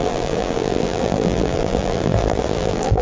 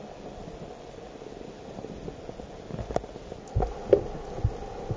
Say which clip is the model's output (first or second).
first